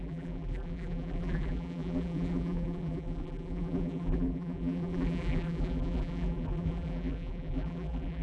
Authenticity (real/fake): fake